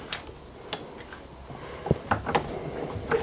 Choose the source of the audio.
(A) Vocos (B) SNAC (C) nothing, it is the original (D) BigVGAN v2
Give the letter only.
C